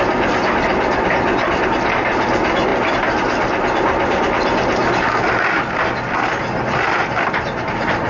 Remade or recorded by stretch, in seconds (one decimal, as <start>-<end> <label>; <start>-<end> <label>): 0.0-2.7 remade; 2.7-6.9 recorded; 6.9-8.1 remade